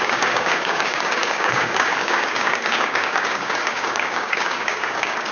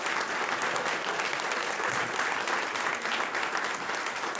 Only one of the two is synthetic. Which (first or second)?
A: first